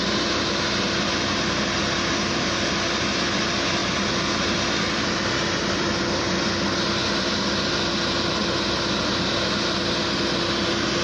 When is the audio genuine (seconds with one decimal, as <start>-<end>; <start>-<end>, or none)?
0.0-11.0